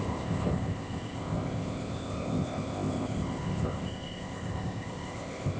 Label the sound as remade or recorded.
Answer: remade